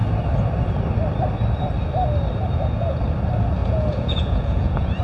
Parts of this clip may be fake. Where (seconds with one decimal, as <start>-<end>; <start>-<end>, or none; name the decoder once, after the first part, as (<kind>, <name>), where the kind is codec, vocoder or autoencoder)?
3.6-5.0 (vocoder, Vocos)